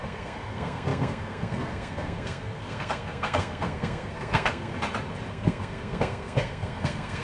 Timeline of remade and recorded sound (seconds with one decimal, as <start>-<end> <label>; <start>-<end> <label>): 0.0-4.7 remade; 4.7-5.3 recorded; 5.3-7.2 remade